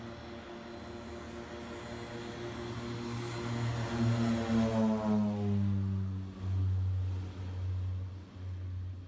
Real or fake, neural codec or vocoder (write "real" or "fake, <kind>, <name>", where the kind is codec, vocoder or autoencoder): real